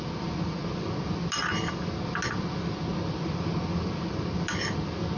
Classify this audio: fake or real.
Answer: real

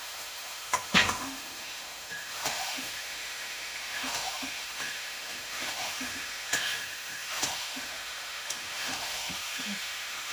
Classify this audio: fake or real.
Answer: fake